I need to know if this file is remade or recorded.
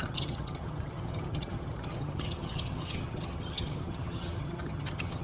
remade